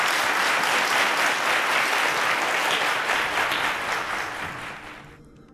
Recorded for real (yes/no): yes